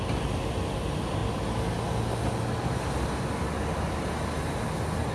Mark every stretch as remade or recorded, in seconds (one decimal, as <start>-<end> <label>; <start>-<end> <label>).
0.0-5.1 recorded